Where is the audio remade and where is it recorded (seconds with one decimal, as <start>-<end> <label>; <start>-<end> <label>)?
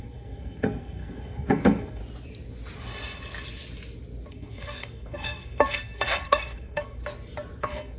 0.0-2.0 remade; 2.0-4.3 recorded; 4.3-7.0 remade; 7.0-7.6 recorded; 7.6-8.0 remade